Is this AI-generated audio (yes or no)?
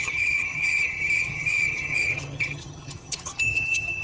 yes